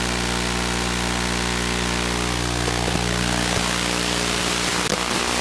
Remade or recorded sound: recorded